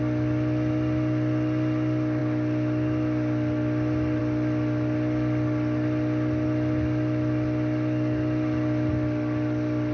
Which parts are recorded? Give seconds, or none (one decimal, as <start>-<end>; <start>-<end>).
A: 0.0-9.9